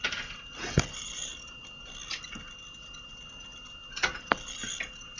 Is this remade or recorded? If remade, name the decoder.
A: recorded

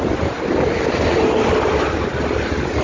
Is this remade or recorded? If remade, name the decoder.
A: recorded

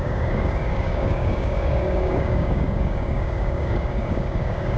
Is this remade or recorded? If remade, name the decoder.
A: remade, codec, DAC